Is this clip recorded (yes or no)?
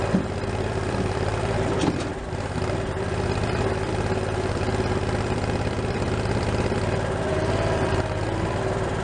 no